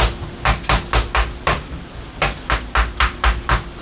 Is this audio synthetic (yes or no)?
no